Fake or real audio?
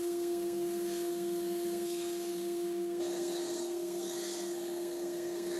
fake